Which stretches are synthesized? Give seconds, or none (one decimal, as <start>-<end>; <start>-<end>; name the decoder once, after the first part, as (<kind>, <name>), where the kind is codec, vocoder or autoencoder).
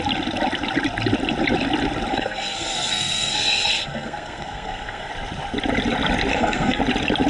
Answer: 2.1-5.1 (codec, SNAC); 6.3-6.8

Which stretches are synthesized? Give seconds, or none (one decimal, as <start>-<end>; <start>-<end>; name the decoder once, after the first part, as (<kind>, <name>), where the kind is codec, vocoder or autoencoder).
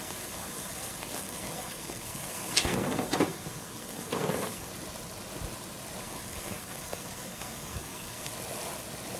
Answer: 0.0-4.7 (codec, SNAC); 6.0-8.3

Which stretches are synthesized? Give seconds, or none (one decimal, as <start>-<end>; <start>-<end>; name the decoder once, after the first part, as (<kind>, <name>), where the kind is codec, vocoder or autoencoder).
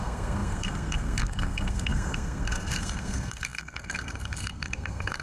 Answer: 0.0-5.2 (codec, SNAC)